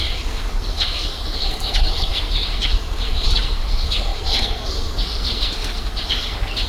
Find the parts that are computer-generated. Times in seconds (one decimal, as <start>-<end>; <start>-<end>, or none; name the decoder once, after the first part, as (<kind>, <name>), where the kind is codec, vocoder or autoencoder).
0.0-6.7 (codec, SNAC)